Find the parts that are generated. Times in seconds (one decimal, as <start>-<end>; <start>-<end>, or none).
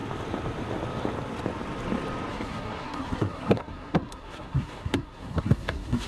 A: 2.3-6.1